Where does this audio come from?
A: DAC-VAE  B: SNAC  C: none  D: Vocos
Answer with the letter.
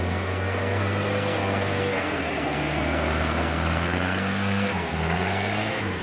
B